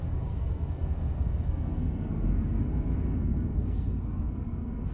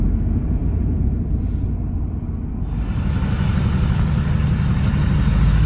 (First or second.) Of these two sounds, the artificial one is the first